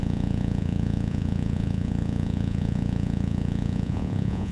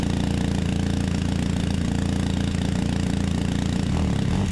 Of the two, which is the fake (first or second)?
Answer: first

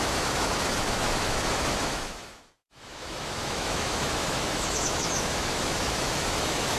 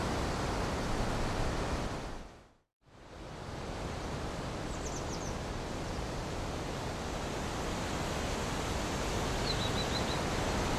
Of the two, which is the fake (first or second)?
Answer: first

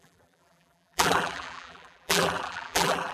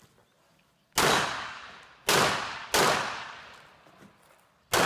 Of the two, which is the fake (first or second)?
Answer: first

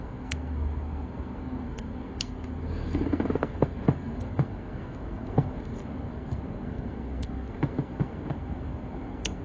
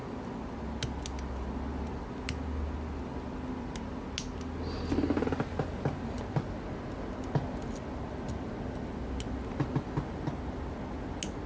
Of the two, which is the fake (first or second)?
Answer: first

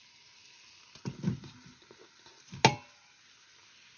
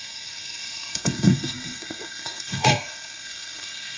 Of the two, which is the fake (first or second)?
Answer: second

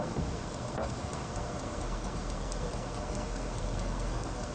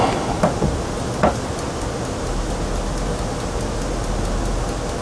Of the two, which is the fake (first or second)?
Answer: first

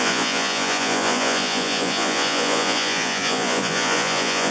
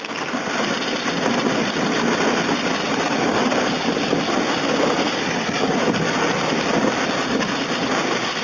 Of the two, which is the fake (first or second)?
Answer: first